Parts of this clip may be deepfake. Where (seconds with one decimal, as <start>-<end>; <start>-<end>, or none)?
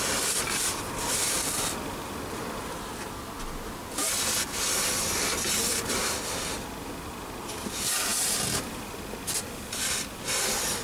none